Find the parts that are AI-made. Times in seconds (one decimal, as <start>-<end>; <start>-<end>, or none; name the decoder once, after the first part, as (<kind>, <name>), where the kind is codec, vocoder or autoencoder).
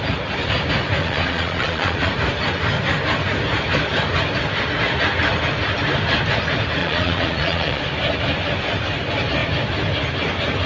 1.0-2.1 (vocoder, Vocos); 6.8-7.8